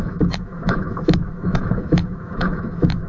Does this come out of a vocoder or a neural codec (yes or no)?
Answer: yes